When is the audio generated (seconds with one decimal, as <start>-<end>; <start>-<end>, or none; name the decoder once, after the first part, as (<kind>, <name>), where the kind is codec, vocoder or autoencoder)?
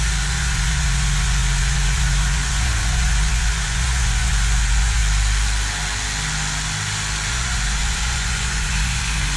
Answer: 0.0-5.0 (vocoder, Vocos); 7.3-9.4